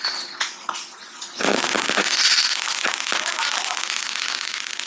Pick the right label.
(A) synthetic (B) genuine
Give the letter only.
B